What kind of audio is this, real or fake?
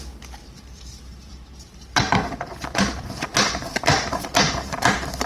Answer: fake